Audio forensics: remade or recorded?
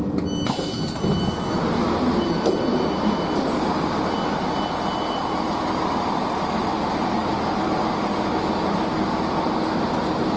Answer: recorded